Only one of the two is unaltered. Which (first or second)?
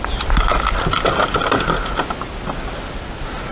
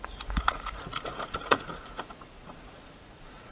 first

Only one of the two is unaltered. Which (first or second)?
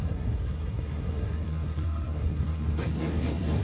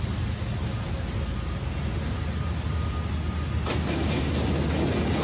second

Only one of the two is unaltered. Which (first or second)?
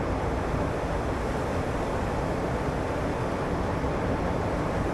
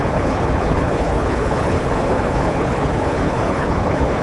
first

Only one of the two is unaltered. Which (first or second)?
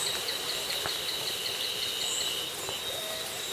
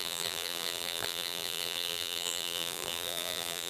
first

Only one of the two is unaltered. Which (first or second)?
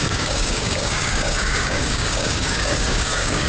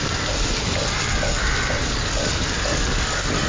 second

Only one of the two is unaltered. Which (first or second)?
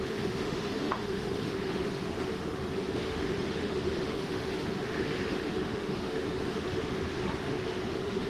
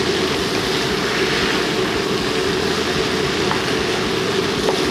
second